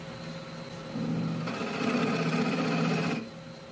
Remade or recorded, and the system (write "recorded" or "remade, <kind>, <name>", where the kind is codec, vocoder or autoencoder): recorded